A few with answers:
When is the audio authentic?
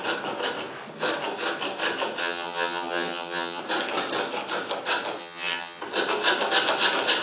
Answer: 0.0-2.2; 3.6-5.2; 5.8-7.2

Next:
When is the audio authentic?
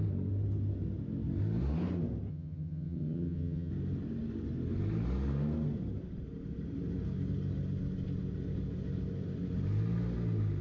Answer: 0.0-2.3; 3.7-10.6